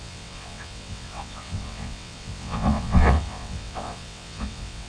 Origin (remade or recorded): remade